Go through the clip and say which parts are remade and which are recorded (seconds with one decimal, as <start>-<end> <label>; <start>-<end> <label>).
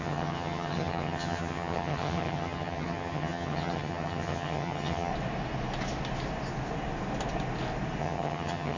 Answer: 0.0-5.1 remade; 5.1-8.0 recorded; 8.0-8.8 remade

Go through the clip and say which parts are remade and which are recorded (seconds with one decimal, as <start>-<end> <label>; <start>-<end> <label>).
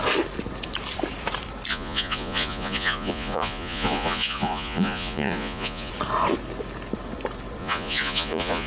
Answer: 0.0-1.7 recorded; 1.7-5.9 remade; 5.9-7.6 recorded; 7.6-8.7 remade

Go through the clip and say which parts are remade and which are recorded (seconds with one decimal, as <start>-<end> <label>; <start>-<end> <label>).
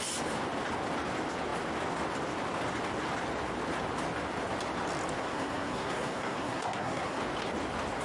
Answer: 0.0-5.2 recorded; 5.2-7.2 remade; 7.2-8.0 recorded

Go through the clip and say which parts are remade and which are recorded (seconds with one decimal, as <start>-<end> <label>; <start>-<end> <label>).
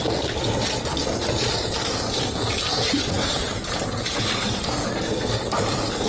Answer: 0.0-2.8 recorded; 2.8-3.5 remade; 3.5-6.1 recorded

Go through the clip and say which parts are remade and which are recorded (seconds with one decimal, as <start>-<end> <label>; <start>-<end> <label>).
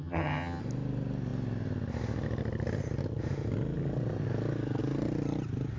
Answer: 0.0-0.6 remade; 0.6-5.8 recorded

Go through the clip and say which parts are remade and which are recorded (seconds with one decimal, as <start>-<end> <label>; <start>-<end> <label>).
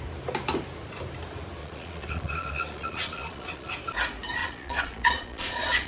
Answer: 0.0-1.6 recorded; 1.6-3.7 remade; 3.7-4.4 recorded; 4.4-5.9 remade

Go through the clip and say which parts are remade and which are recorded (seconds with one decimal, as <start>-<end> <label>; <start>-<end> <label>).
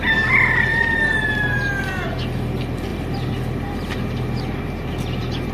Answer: 0.0-5.5 recorded